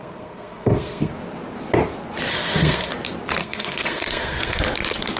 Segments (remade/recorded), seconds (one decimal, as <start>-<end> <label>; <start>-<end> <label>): 0.0-1.1 remade; 1.1-2.3 recorded; 2.3-2.9 remade; 2.9-3.4 recorded; 3.4-4.6 remade; 4.6-5.2 recorded